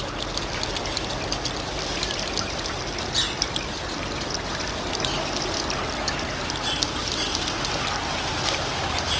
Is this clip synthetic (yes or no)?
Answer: no